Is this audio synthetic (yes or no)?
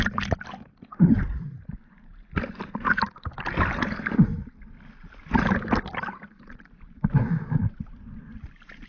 no